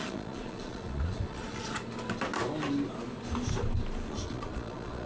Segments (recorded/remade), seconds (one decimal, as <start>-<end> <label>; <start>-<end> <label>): 0.0-1.8 remade; 1.8-4.1 recorded; 4.1-5.1 remade